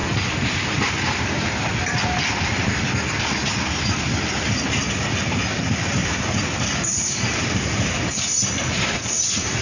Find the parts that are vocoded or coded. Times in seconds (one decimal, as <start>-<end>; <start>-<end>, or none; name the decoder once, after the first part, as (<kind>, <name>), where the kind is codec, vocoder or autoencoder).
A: 0.0-1.6 (vocoder, BigVGAN v2); 6.0-9.0